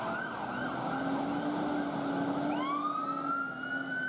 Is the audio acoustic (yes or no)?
yes